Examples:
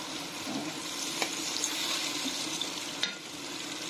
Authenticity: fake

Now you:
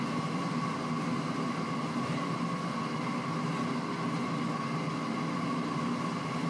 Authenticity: real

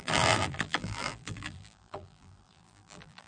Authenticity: fake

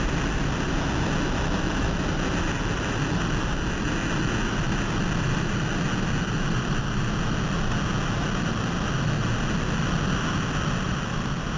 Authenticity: real